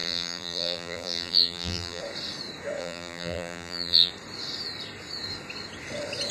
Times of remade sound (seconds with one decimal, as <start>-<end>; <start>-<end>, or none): 0.0-2.0; 2.8-4.1